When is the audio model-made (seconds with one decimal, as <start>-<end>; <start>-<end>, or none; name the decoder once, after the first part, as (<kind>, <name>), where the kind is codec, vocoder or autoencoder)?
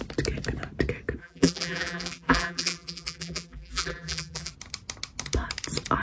1.2-4.5 (vocoder, BigVGAN v2)